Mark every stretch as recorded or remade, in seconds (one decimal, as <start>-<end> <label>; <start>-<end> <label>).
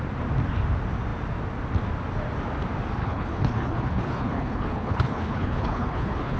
0.0-3.0 recorded; 3.0-6.4 remade